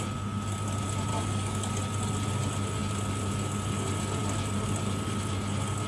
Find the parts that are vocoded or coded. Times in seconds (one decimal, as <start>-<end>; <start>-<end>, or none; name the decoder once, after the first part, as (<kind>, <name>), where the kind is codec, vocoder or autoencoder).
1.1-1.7 (codec, DAC)